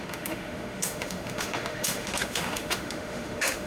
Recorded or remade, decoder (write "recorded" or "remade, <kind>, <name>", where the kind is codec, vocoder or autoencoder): remade, autoencoder, DAC-VAE